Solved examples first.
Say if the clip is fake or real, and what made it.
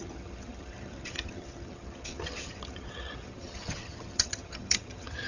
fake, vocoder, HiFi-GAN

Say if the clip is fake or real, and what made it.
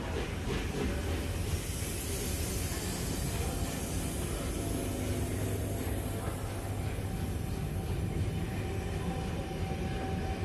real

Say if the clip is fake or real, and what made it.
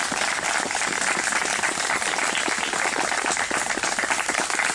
real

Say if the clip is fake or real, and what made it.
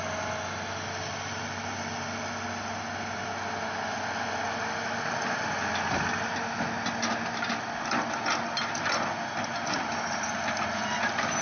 real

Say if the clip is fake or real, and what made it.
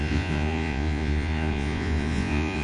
fake, vocoder, Vocos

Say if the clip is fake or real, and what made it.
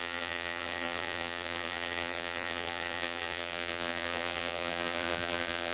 fake, vocoder, BigVGAN v2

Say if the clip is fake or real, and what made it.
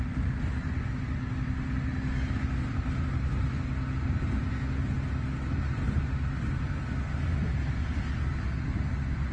real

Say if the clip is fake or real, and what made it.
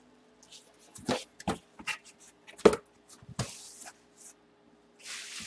real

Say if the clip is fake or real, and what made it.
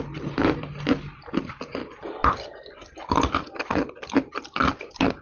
real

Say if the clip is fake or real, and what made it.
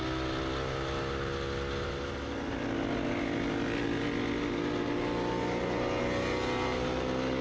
real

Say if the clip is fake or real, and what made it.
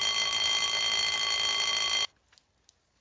real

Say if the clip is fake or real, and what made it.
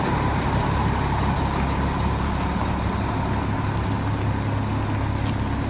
real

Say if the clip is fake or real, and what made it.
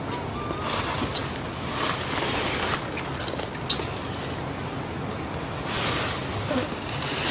real